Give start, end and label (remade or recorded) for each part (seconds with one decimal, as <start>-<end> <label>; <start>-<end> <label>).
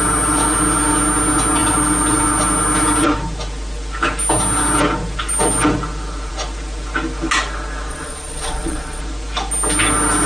0.0-7.9 recorded; 7.9-9.0 remade; 9.0-10.3 recorded